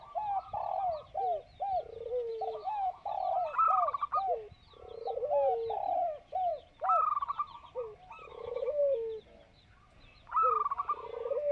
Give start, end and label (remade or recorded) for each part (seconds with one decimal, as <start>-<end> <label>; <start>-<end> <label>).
0.0-2.3 recorded; 2.3-3.1 remade; 3.1-8.3 recorded; 8.3-8.8 remade; 8.8-11.5 recorded